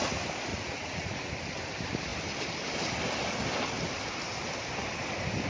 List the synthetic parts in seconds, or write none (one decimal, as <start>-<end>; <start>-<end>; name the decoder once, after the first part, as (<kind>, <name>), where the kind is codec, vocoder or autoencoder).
0.5-1.3 (vocoder, Vocos)